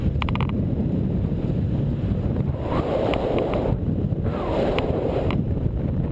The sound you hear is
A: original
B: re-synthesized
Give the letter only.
B